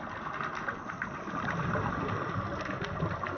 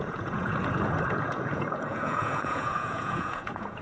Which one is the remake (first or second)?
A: second